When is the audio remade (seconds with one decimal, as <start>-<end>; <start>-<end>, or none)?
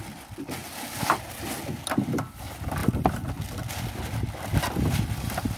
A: none